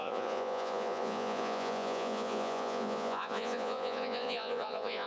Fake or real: fake